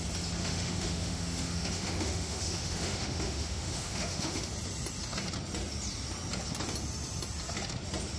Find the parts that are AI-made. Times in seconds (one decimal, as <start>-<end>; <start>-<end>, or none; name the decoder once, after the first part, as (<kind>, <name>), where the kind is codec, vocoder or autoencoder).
0.4-4.5 (autoencoder, DAC-VAE)

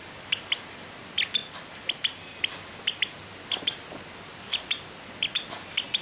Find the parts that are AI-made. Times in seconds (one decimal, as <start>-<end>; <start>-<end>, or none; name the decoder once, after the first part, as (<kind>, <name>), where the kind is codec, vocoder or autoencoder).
none

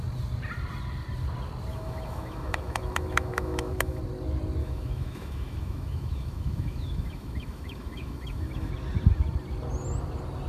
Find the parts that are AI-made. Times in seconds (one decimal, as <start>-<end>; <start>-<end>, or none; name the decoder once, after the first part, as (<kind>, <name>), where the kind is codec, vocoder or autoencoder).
1.7-4.0 (autoencoder, DAC-VAE); 4.6-8.7

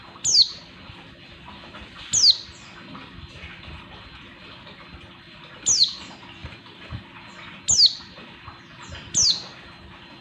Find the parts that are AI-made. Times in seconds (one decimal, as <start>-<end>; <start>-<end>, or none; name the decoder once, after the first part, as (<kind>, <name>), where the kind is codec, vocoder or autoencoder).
none

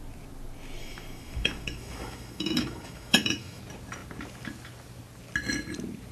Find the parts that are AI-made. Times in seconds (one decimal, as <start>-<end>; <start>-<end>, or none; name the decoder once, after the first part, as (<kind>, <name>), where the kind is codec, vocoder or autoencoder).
0.8-3.6 (autoencoder, DAC-VAE)

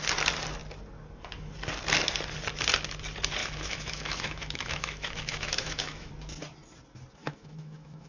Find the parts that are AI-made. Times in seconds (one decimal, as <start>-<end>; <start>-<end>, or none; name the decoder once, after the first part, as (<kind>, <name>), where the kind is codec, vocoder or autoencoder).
3.4-6.1 (autoencoder, DAC-VAE); 7.2-8.1